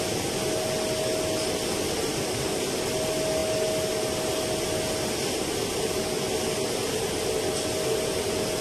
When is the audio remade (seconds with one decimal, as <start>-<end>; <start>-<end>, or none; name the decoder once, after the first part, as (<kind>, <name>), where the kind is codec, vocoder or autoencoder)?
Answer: none